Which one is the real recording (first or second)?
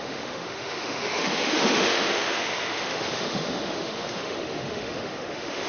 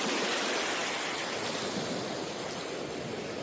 second